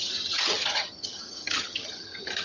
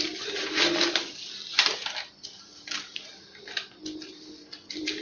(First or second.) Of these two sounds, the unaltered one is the second